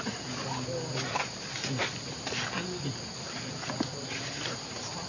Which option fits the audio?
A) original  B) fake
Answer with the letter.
A